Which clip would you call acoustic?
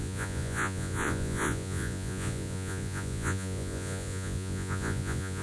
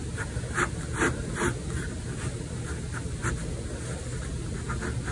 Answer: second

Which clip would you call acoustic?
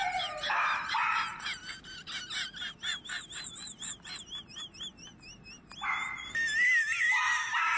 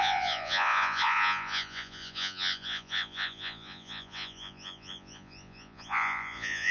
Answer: first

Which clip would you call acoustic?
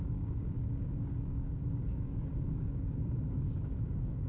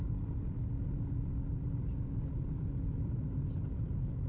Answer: second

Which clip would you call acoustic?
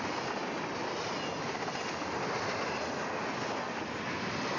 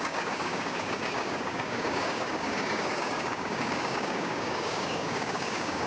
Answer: first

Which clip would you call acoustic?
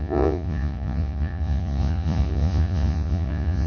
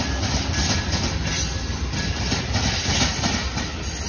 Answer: second